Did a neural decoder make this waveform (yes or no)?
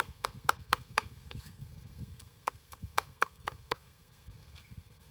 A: yes